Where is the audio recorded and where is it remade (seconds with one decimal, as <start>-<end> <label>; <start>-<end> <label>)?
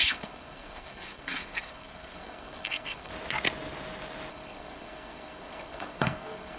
0.0-3.1 remade; 3.1-4.3 recorded; 4.3-6.6 remade